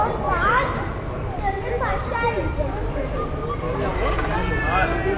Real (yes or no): yes